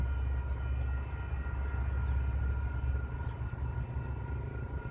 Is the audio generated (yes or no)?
no